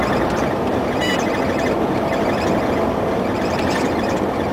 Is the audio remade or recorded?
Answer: remade